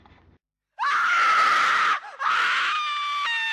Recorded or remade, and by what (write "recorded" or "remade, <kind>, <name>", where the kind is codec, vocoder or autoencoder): recorded